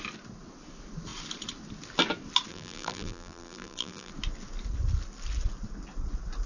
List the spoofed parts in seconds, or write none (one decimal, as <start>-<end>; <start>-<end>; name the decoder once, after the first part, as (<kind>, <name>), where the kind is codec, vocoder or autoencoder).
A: 2.5-4.1 (vocoder, BigVGAN v2)